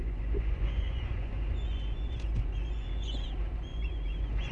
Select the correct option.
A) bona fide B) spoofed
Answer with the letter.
B